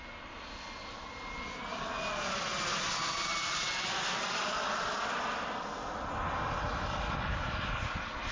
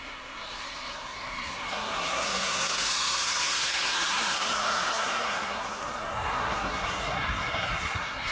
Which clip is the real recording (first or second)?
first